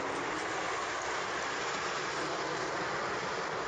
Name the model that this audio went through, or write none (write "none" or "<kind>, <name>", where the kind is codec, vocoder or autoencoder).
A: none